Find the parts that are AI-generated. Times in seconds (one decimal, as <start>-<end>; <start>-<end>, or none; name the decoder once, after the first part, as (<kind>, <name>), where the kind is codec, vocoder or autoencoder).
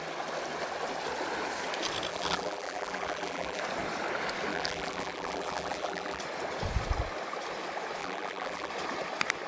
2.1-3.6 (vocoder, BigVGAN v2); 4.5-6.2; 8.0-8.7